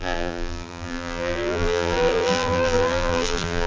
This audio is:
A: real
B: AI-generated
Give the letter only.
B